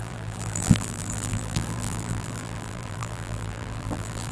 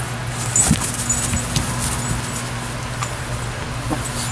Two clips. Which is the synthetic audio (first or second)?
first